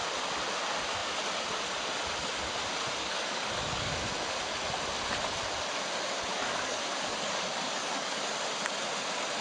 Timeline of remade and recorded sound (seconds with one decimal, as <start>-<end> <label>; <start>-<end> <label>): 0.0-3.0 recorded; 3.0-3.9 remade; 3.9-6.3 recorded; 6.3-8.2 remade; 8.2-9.4 recorded